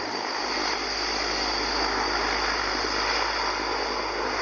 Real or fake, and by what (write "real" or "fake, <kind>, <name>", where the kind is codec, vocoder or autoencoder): real